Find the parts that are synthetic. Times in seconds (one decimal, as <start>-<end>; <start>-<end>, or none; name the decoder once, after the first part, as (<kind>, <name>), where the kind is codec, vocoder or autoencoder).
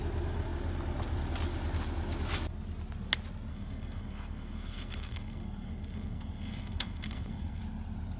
3.5-7.6 (codec, SNAC)